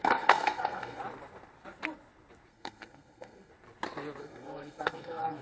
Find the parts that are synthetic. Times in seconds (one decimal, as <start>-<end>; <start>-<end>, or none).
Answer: 0.0-1.0; 2.5-3.5; 4.2-5.4